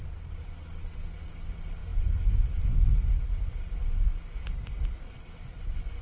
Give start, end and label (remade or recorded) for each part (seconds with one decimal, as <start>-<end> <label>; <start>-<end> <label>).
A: 0.0-6.0 recorded